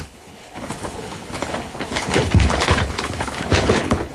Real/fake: fake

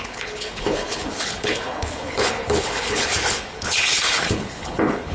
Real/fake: fake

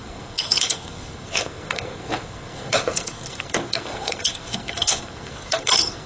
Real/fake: fake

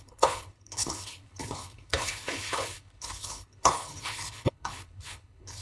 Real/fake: fake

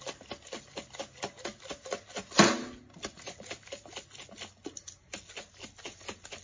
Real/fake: real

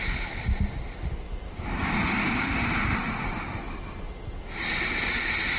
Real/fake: real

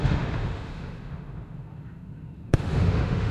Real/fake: fake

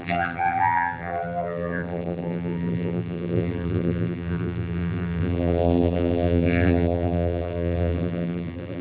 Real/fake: fake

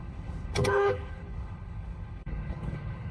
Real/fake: fake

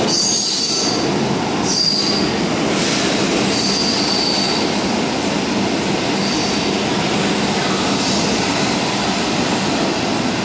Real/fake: real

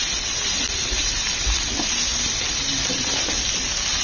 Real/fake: real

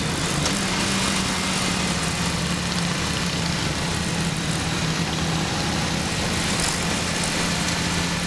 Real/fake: real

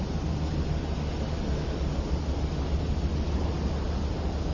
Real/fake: real